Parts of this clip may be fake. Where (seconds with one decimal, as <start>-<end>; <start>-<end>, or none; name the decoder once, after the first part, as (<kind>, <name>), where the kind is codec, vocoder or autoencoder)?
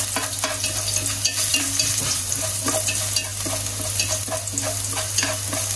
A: 1.5-2.6 (vocoder, BigVGAN v2)